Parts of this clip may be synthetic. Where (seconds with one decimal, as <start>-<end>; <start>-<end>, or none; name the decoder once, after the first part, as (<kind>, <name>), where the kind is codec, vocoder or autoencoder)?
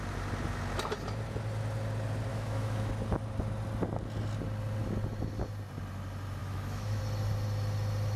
2.3-2.9 (autoencoder, DAC-VAE); 6.4-7.0